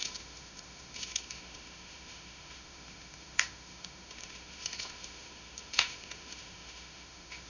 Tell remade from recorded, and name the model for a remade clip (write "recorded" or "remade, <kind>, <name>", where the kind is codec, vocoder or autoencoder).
remade, autoencoder, DAC-VAE